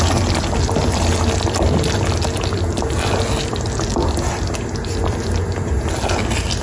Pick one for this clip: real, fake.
real